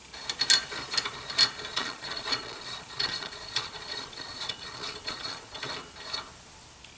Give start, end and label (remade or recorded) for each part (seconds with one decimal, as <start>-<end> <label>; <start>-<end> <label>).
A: 0.0-1.7 recorded; 1.7-5.6 remade; 5.6-7.0 recorded